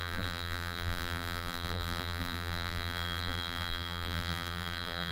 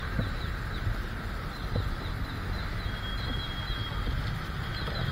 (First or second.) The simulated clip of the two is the first